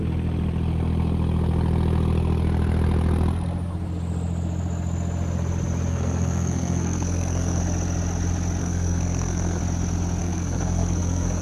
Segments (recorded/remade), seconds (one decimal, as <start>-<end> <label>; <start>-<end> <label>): 0.0-5.9 recorded; 5.9-7.6 remade; 7.6-8.6 recorded; 8.6-9.6 remade; 9.6-10.2 recorded; 10.2-11.4 remade